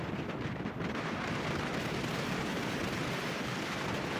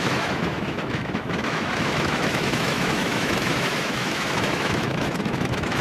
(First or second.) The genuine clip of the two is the first